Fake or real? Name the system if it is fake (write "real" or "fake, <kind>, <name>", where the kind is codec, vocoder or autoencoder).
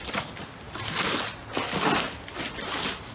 real